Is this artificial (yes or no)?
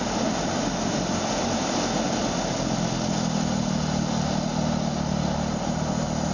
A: no